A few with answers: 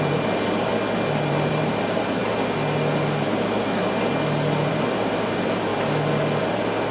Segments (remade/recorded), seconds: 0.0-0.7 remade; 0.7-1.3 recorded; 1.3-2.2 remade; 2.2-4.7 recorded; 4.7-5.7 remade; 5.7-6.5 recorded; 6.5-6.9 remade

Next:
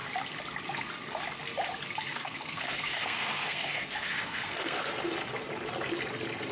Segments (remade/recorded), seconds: 0.0-2.1 recorded; 2.1-4.8 remade; 4.8-6.5 recorded

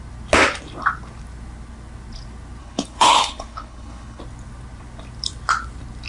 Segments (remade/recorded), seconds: 0.0-2.6 recorded; 2.6-4.2 remade; 4.2-6.1 recorded

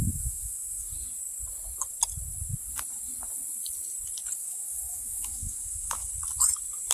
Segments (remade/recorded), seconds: 0.0-0.9 remade; 0.9-4.4 recorded; 4.4-6.1 remade; 6.1-6.9 recorded

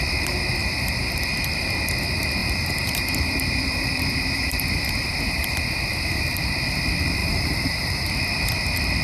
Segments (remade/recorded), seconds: 0.0-0.6 recorded; 0.6-1.3 remade; 1.3-2.4 recorded; 2.4-5.6 remade; 5.6-7.2 recorded; 7.2-8.2 remade; 8.2-9.0 recorded

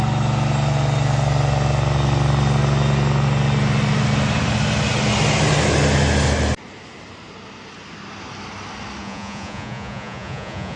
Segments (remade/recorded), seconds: 0.0-9.0 recorded; 9.0-10.8 remade

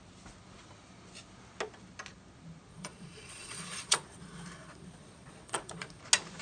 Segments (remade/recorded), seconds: 0.0-2.7 recorded; 2.7-6.0 remade; 6.0-6.4 recorded